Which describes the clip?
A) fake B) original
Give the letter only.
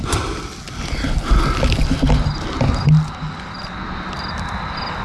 B